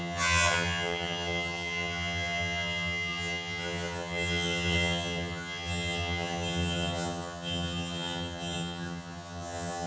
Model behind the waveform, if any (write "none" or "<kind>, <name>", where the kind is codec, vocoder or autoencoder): vocoder, HiFi-GAN